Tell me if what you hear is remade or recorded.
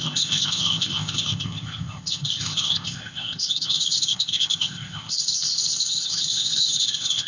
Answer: remade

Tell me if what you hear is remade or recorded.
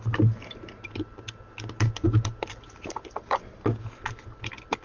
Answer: recorded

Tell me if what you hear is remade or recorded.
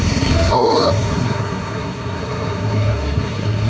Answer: remade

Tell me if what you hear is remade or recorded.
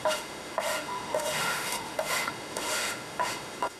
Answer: remade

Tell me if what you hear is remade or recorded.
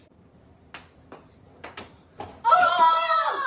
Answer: remade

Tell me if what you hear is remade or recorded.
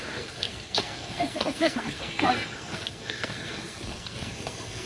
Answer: remade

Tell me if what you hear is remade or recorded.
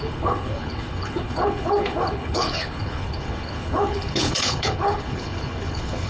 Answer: remade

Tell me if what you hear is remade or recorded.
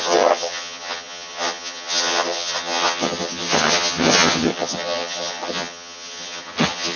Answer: remade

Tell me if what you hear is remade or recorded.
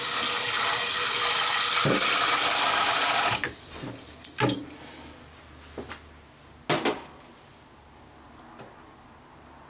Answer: recorded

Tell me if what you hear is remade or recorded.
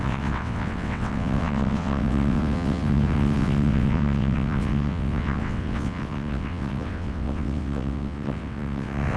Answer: remade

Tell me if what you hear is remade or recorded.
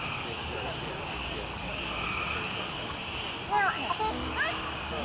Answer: recorded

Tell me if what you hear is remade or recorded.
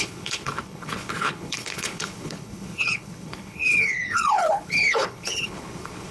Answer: remade